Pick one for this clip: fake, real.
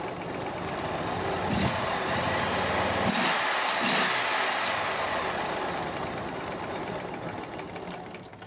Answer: real